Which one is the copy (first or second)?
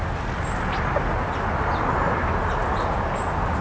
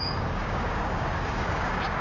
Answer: second